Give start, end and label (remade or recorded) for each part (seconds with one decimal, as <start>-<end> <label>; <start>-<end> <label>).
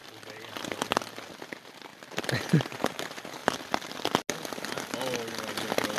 0.0-0.7 remade; 0.7-1.9 recorded; 1.9-2.5 remade; 2.5-6.0 recorded